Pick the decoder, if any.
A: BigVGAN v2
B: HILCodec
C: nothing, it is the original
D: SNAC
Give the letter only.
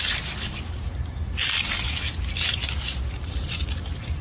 C